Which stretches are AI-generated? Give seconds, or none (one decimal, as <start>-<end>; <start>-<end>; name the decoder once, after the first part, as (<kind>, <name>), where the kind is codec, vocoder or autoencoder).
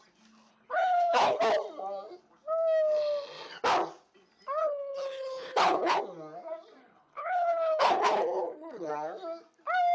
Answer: 0.5-1.4 (codec, HILCodec); 4.6-6.0; 6.8-8.9